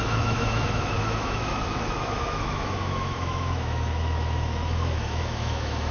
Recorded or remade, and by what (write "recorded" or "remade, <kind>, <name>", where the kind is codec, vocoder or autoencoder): remade, autoencoder, DAC-VAE